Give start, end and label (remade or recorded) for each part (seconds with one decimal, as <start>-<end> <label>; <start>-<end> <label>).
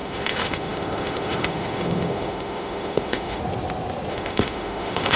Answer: 0.0-3.4 remade; 3.4-4.1 recorded; 4.1-5.2 remade